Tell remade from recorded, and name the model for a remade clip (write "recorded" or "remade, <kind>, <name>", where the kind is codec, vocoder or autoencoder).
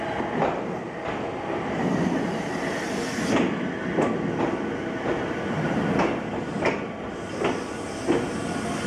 recorded